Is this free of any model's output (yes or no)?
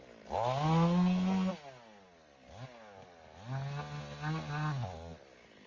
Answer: yes